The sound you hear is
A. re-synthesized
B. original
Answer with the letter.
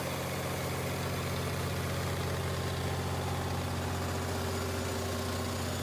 B